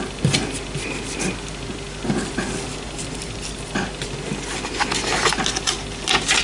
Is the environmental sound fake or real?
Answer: real